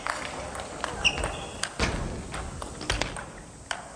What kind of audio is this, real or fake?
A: real